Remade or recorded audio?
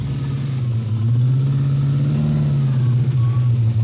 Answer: recorded